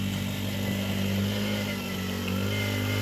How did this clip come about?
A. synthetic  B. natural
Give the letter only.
B